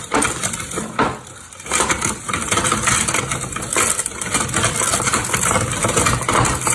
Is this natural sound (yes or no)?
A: yes